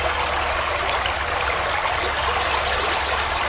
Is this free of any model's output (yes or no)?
yes